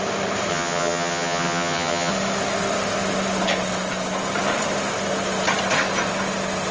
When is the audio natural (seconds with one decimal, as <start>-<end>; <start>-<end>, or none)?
0.0-0.5; 2.1-6.7